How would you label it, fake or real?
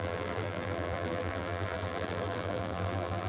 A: fake